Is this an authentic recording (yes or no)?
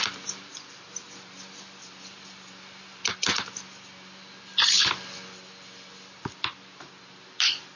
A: yes